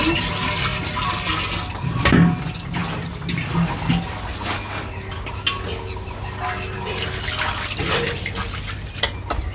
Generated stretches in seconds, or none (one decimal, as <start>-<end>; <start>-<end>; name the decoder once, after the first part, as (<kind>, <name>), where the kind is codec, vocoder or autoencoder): none